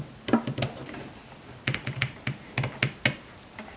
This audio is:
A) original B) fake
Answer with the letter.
A